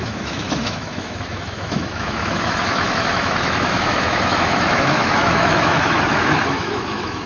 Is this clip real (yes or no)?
no